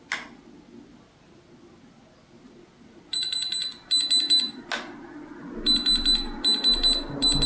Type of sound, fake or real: real